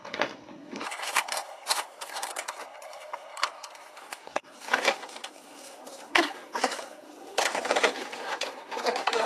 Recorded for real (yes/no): no